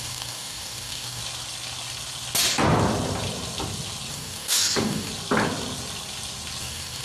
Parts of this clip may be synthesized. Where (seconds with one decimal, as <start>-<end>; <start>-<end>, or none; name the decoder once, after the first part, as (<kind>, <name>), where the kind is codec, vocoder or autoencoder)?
0.0-1.2 (codec, DAC); 4.1-5.1; 6.6-7.0